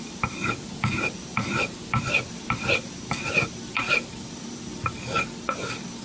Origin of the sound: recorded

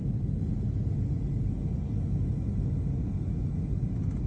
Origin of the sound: recorded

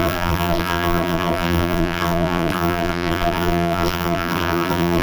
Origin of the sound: remade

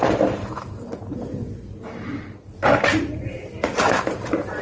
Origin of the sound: remade